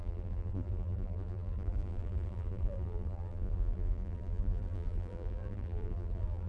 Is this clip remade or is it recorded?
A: remade